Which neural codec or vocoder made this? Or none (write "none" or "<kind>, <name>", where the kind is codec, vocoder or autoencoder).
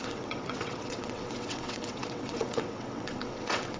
vocoder, WaveNeXt